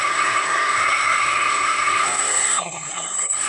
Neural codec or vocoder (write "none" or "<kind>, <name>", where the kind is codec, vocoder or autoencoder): codec, SNAC